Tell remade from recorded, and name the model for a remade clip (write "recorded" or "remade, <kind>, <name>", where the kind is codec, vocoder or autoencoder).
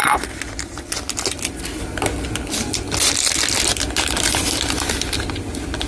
recorded